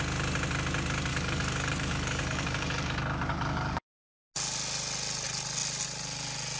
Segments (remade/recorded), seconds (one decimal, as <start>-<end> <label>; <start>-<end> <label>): 0.0-1.1 recorded; 1.1-4.1 remade; 4.1-6.6 recorded